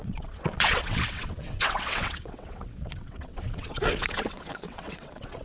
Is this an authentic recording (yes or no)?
no